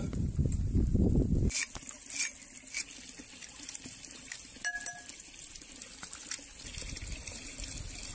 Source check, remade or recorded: recorded